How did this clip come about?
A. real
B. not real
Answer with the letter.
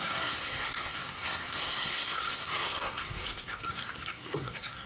B